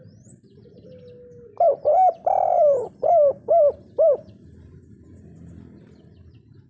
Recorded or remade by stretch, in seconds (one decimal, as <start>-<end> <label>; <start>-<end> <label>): 0.0-1.9 recorded; 1.9-5.9 remade; 5.9-6.7 recorded